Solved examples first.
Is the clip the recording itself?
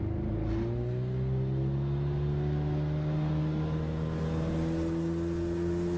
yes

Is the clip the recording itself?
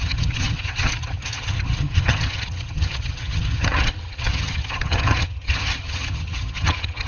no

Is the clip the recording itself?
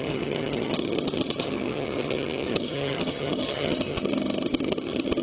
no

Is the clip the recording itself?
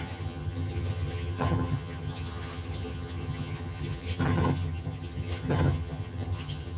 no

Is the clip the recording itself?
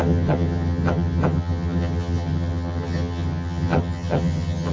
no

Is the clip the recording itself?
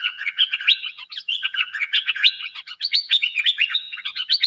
no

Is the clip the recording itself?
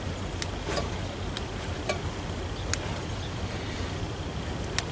yes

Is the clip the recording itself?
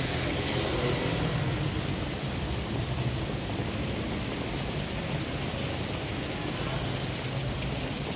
yes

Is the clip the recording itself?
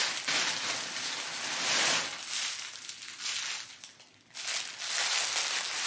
yes